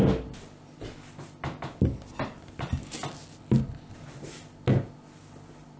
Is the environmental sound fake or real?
real